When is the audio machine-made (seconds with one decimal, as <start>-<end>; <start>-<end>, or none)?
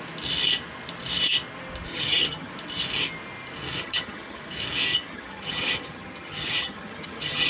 1.9-2.5; 3.8-4.4; 4.9-7.5